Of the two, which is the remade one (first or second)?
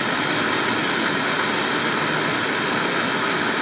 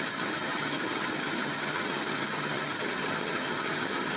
second